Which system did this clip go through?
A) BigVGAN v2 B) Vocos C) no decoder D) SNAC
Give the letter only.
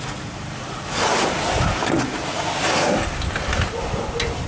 C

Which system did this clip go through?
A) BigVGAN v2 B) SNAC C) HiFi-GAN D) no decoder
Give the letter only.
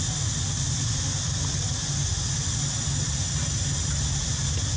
D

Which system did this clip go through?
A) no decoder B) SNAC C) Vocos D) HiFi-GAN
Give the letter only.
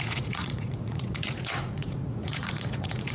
C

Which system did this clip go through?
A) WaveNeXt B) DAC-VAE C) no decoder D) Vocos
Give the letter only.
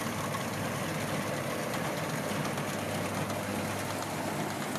C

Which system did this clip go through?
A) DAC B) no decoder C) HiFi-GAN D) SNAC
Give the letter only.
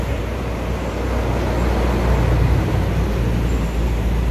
B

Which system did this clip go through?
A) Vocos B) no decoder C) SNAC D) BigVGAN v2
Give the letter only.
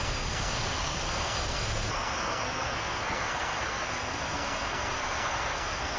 C